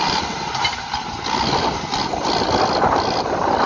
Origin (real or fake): real